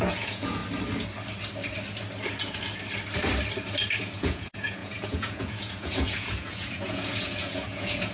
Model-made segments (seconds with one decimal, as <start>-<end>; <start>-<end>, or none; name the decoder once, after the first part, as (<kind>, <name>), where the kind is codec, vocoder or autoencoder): 0.0-0.6 (vocoder, Vocos); 4.0-8.1